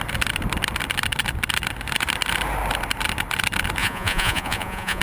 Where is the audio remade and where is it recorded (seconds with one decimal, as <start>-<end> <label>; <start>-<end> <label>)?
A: 0.0-3.8 recorded; 3.8-5.0 remade